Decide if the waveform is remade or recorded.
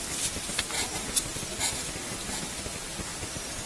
remade